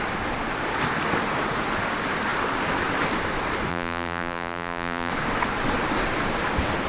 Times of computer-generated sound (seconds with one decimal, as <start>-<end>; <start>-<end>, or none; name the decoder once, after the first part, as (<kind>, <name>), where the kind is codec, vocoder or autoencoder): 3.7-5.1 (vocoder, BigVGAN v2)